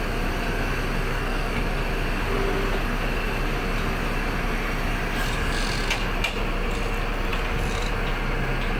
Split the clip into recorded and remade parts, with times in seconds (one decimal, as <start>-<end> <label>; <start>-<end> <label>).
0.0-1.1 recorded; 1.1-1.6 remade; 1.6-8.8 recorded